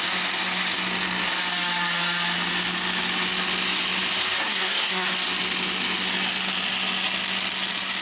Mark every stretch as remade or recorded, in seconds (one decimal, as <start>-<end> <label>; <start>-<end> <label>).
0.0-4.4 recorded; 4.4-5.1 remade; 5.1-8.0 recorded